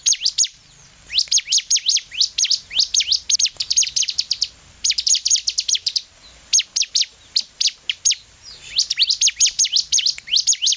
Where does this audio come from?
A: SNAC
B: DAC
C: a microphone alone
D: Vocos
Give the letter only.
C